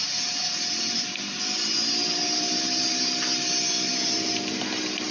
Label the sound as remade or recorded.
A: recorded